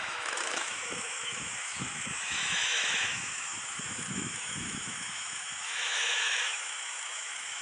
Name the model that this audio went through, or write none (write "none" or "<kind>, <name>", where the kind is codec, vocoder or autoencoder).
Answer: autoencoder, DAC-VAE